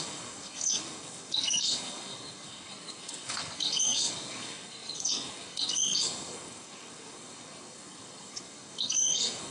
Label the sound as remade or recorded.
remade